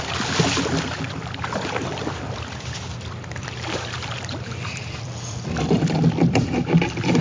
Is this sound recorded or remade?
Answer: remade